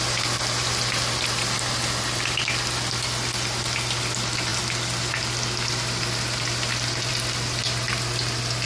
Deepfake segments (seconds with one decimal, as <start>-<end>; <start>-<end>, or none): none